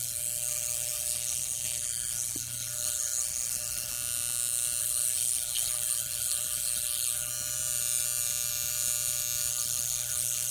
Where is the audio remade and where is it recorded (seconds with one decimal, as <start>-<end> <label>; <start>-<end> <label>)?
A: 0.0-3.9 remade; 3.9-4.8 recorded; 4.8-7.3 remade; 7.3-9.5 recorded; 9.5-10.5 remade